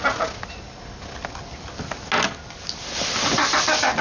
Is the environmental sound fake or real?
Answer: real